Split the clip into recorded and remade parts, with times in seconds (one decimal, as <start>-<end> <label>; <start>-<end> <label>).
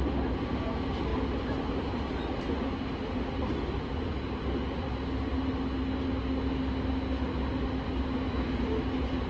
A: 0.0-9.3 recorded